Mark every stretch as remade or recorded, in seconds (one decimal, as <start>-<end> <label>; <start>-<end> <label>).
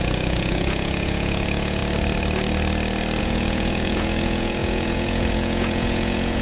0.0-1.8 remade; 1.8-3.2 recorded; 3.2-6.4 remade